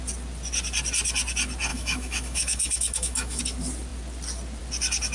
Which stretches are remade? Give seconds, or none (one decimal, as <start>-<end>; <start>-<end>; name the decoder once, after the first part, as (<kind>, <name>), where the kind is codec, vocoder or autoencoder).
1.7-3.4 (autoencoder, DAC-VAE)